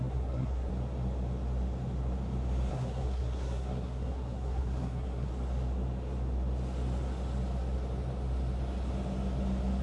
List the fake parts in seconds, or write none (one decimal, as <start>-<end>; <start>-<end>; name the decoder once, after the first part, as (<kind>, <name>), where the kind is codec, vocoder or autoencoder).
0.0-0.7 (codec, SNAC); 2.7-5.3